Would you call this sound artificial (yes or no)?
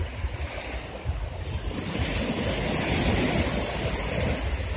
no